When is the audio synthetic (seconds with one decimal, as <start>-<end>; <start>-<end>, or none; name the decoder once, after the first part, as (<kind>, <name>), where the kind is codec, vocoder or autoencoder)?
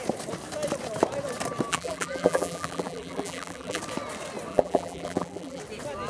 1.7-3.8 (vocoder, BigVGAN v2); 4.5-5.6